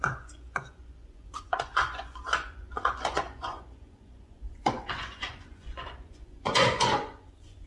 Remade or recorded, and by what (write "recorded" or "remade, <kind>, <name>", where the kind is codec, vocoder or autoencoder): remade, vocoder, Vocos